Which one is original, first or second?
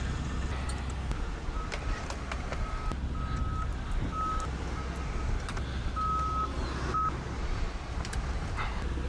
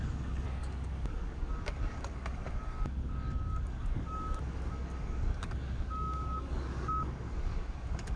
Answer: first